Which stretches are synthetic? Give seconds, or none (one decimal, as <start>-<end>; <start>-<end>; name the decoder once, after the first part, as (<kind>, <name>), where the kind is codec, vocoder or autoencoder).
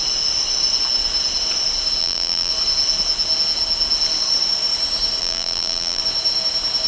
2.0-2.5 (vocoder, BigVGAN v2); 5.2-6.0